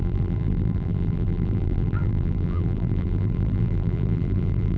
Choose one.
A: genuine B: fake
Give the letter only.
B